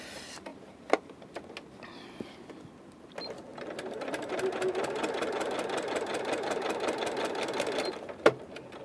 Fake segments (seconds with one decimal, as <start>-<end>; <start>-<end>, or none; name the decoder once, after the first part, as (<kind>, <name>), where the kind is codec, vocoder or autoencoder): none